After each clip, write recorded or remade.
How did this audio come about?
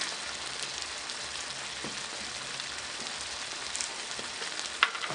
recorded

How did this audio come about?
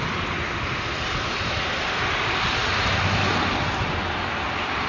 recorded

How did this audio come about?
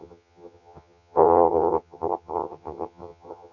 remade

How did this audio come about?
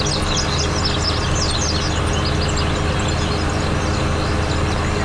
recorded